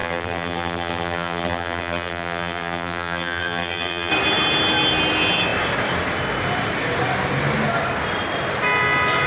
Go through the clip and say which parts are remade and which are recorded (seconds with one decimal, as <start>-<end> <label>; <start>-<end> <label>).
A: 0.0-4.1 remade; 4.1-9.3 recorded